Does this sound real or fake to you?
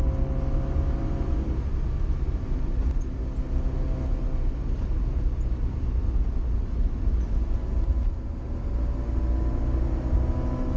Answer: real